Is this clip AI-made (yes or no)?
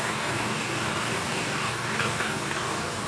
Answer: yes